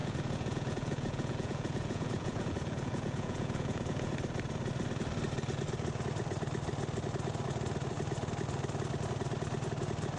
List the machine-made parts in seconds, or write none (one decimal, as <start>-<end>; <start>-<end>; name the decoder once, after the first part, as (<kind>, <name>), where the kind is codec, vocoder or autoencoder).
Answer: 0.0-4.1 (vocoder, Vocos)